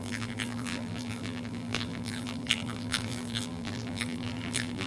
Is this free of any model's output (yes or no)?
no